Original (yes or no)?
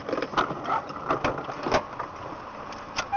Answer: yes